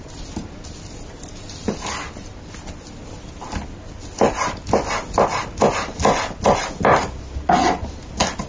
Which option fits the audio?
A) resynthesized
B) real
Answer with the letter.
B